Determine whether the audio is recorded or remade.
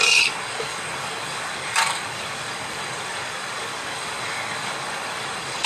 remade